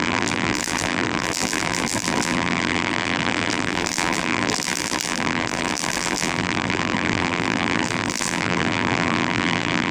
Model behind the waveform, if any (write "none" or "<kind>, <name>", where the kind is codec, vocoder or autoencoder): vocoder, BigVGAN v2